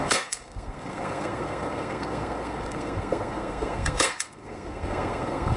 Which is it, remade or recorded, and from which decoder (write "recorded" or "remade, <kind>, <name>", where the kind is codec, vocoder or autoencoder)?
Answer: remade, codec, SNAC